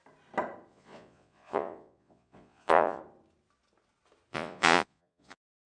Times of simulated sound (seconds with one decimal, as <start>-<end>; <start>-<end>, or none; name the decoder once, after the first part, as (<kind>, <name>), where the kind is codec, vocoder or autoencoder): 0.7-3.0 (vocoder, Vocos); 4.3-5.7